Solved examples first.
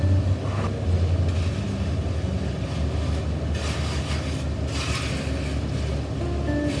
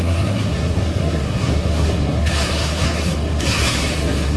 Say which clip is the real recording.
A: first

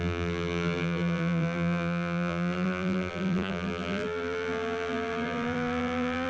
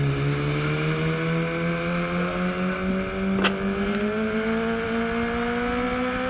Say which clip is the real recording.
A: second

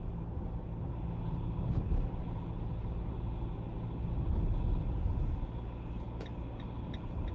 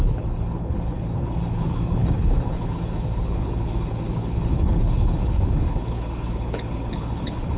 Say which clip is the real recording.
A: first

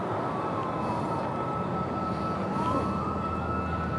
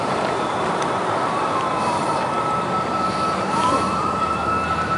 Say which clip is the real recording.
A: first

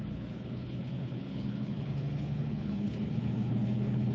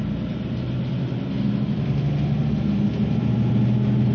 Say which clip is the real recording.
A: second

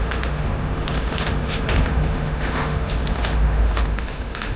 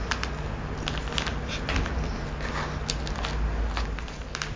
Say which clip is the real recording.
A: second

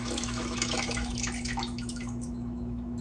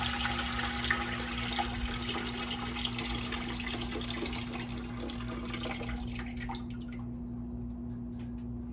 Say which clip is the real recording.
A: second